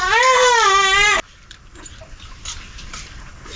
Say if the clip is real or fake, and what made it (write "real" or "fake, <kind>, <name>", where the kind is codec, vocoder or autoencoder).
real